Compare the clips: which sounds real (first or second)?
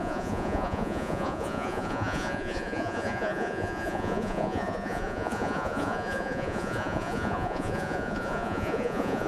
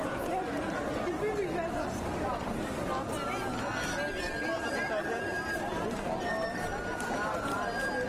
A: second